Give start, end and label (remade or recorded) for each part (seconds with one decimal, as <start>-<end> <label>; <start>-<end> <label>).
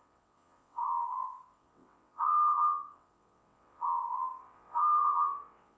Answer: 0.0-5.8 remade